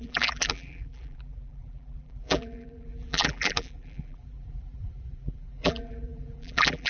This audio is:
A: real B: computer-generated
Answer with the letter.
B